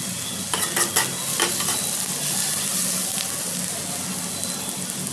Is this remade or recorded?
recorded